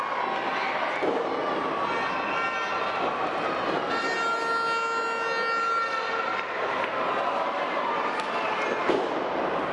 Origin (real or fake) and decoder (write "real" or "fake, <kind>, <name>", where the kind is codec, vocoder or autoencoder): real